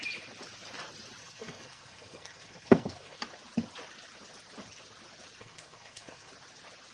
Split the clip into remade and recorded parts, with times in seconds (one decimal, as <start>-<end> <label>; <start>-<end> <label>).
0.0-1.2 recorded; 1.2-3.2 remade; 3.2-5.4 recorded; 5.4-6.3 remade; 6.3-6.9 recorded